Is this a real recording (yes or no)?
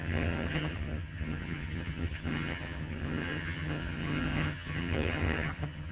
no